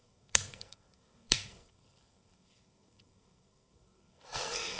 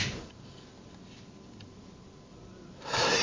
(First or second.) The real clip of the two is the second